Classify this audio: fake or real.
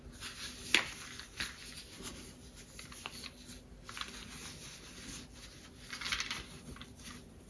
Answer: real